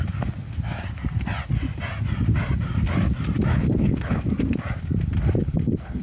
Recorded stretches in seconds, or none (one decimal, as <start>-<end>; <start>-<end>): 0.0-3.5; 4.2-5.4